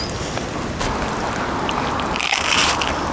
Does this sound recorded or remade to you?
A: recorded